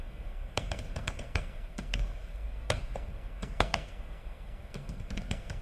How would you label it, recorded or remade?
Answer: remade